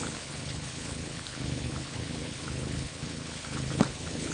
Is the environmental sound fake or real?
fake